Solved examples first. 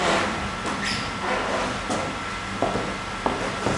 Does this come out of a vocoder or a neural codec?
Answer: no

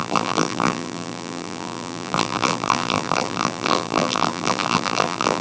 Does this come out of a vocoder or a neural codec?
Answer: yes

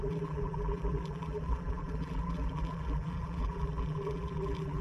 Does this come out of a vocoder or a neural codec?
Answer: yes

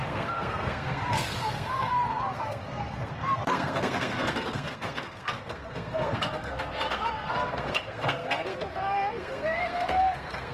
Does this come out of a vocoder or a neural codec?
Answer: yes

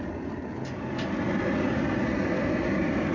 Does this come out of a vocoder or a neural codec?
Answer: no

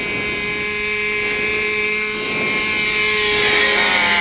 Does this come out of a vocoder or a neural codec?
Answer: no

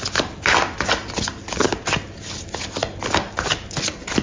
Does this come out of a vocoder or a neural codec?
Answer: no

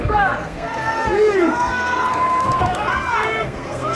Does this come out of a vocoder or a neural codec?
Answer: yes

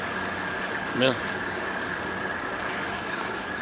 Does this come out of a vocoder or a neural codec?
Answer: yes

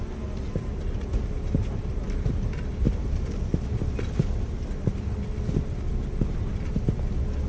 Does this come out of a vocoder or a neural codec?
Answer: no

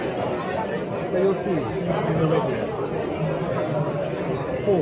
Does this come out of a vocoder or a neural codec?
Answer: no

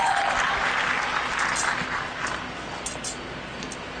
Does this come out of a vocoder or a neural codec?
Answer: no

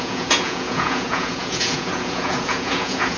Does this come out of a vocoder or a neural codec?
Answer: yes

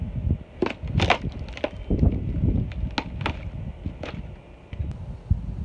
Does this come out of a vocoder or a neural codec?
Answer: no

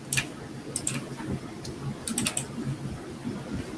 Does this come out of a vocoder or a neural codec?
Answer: no